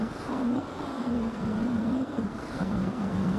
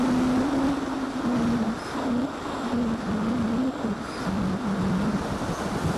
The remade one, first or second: first